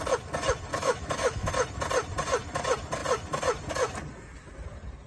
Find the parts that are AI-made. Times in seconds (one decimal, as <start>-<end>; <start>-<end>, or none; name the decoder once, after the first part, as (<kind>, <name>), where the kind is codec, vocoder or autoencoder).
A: 0.7-1.5 (autoencoder, DAC-VAE)